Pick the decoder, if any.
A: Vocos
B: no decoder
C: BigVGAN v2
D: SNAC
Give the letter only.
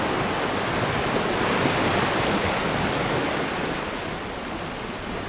B